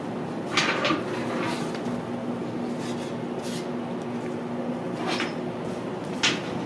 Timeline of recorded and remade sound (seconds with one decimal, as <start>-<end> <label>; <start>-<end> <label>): 0.0-6.7 recorded